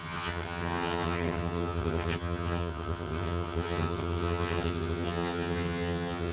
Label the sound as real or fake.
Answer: fake